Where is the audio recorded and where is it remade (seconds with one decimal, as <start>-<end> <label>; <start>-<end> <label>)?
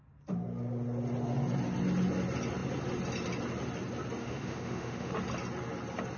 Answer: 0.0-4.2 recorded; 4.2-5.1 remade; 5.1-6.2 recorded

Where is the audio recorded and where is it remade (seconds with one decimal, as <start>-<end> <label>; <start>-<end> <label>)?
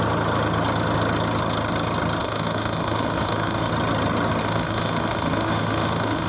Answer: 0.0-2.2 recorded; 2.2-3.7 remade; 3.7-4.4 recorded; 4.4-6.3 remade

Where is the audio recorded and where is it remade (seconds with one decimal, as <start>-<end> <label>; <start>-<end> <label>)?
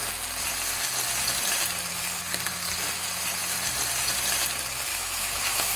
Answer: 0.0-4.9 recorded; 4.9-5.8 remade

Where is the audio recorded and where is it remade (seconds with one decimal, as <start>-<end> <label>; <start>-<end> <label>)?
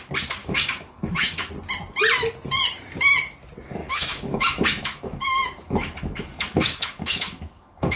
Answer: 0.0-0.4 recorded; 0.4-1.5 remade; 1.5-3.8 recorded; 3.8-8.0 remade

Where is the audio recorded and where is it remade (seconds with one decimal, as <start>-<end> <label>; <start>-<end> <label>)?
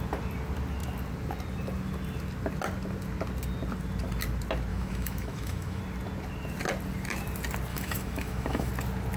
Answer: 0.0-4.7 recorded; 4.7-5.8 remade; 5.8-7.7 recorded; 7.7-8.7 remade; 8.7-9.2 recorded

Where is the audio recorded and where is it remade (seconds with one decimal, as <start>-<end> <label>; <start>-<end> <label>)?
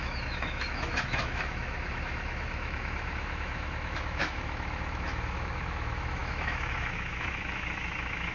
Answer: 0.0-8.3 remade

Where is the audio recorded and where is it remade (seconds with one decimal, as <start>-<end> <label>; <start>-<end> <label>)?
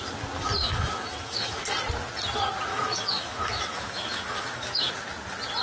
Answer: 0.0-0.6 recorded; 0.6-1.6 remade; 1.6-2.7 recorded; 2.7-4.9 remade; 4.9-5.6 recorded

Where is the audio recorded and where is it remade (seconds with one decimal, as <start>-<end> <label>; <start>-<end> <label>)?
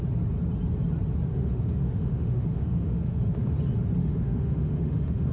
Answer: 0.0-1.3 recorded; 1.3-3.2 remade; 3.2-4.0 recorded; 4.0-5.3 remade